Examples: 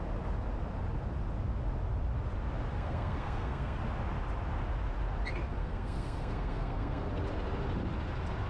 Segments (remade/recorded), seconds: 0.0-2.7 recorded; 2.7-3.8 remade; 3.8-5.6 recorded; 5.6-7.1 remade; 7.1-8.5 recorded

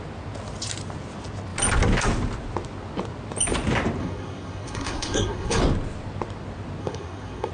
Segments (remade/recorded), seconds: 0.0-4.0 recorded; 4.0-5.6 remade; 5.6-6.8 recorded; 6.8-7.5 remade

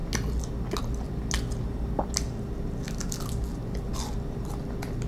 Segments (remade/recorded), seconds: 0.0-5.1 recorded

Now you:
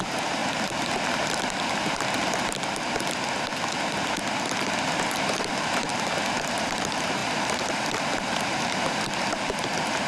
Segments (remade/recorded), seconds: 0.0-0.4 remade; 0.4-5.0 recorded; 5.0-5.9 remade; 5.9-6.5 recorded; 6.5-10.1 remade

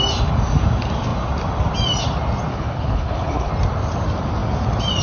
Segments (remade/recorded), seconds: 0.0-2.5 recorded; 2.5-3.5 remade; 3.5-5.0 recorded

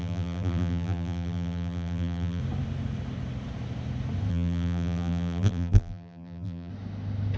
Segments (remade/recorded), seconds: 0.0-2.4 remade; 2.4-4.3 recorded; 4.3-6.7 remade; 6.7-7.4 recorded

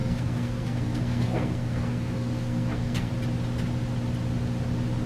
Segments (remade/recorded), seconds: 0.0-3.1 remade; 3.1-5.1 recorded